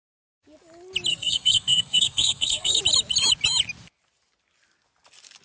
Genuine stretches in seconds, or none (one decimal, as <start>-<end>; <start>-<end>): 0.0-1.1; 2.8-5.4